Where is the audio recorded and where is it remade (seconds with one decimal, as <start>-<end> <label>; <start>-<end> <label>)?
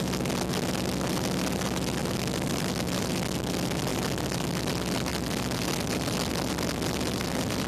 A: 0.0-7.7 recorded